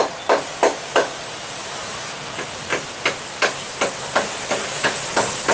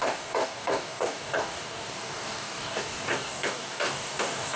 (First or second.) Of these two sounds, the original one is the first